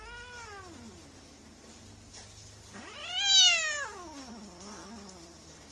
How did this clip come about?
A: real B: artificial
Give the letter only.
A